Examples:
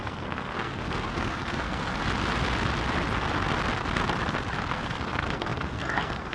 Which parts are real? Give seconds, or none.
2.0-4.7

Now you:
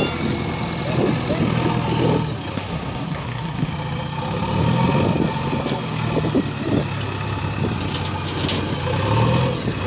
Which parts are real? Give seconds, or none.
0.0-2.5; 3.7-9.9

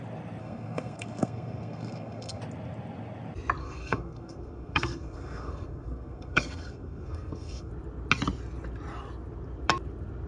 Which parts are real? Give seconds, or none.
0.0-0.4; 2.4-3.6; 7.7-10.3

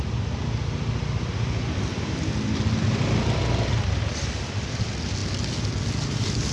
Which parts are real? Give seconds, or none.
0.0-6.5